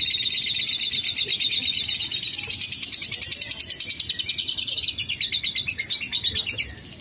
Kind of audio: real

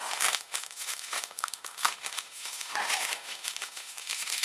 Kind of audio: fake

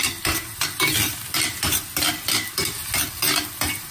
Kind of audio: real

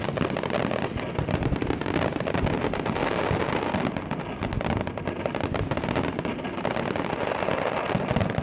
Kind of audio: real